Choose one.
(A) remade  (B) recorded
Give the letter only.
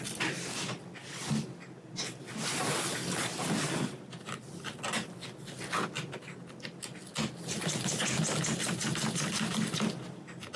B